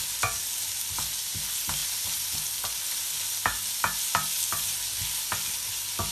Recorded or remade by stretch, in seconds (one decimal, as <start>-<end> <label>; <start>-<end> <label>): 0.0-6.1 recorded